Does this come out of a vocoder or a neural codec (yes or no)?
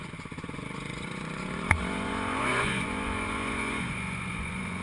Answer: yes